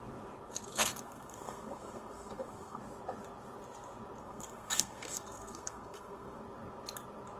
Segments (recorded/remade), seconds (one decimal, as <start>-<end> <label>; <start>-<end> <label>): 0.0-0.7 recorded; 0.7-2.8 remade; 2.8-4.2 recorded; 4.2-6.4 remade; 6.4-7.4 recorded